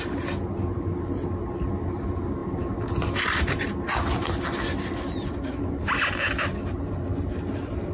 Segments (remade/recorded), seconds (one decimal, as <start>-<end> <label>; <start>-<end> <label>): 0.0-7.9 recorded